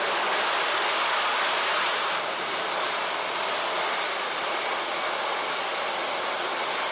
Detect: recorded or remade recorded